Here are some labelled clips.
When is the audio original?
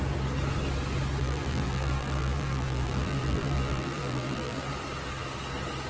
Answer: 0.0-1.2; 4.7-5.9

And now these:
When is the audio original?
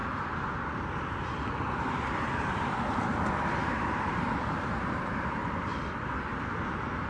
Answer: 0.0-3.5; 5.4-6.5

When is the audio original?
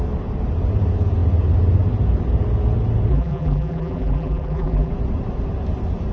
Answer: 0.0-3.1; 4.9-6.1